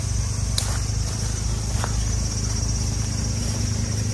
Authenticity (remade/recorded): recorded